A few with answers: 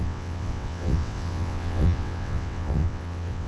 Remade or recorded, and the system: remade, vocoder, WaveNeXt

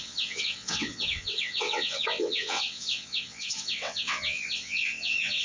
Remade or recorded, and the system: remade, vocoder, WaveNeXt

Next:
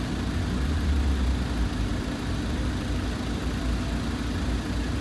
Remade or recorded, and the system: recorded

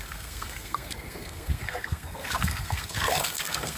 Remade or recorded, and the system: remade, codec, SNAC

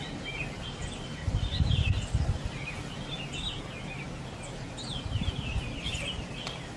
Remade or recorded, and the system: recorded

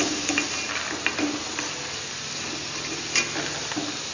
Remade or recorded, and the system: recorded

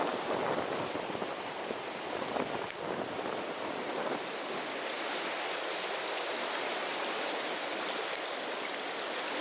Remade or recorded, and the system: recorded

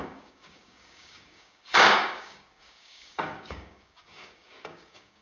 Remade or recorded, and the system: remade, codec, DAC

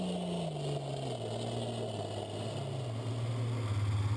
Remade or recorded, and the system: recorded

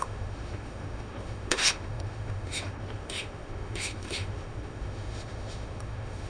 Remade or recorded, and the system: remade, autoencoder, DAC-VAE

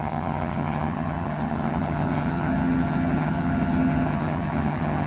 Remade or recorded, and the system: remade, vocoder, HiFi-GAN